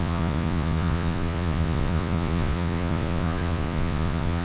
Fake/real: fake